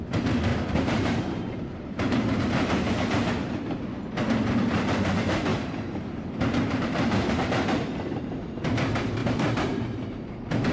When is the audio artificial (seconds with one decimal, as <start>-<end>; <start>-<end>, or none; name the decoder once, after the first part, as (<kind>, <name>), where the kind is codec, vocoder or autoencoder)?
0.5-3.3 (vocoder, BigVGAN v2); 5.5-7.3; 9.2-9.8